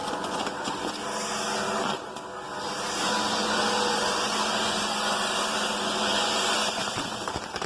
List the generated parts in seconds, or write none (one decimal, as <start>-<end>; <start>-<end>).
0.0-0.9; 3.3-7.3